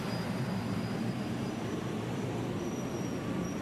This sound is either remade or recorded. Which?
remade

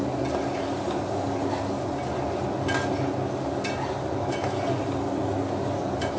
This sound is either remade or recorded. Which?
recorded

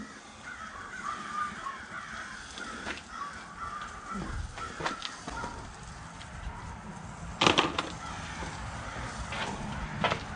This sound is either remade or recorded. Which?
recorded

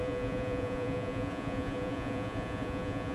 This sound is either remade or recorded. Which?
remade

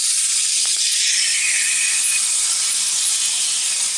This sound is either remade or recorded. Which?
recorded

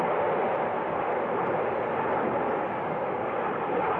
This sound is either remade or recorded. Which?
recorded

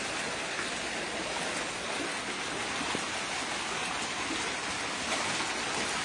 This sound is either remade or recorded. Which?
recorded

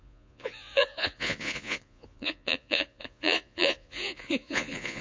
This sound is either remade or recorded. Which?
remade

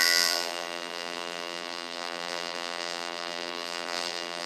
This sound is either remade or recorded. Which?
remade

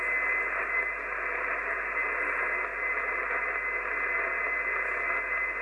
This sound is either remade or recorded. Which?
recorded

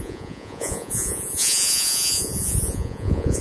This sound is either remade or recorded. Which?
remade